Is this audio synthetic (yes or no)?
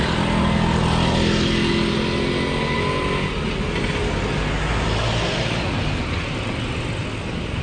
no